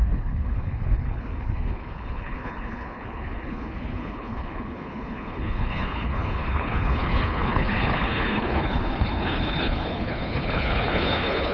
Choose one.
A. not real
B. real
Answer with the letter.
A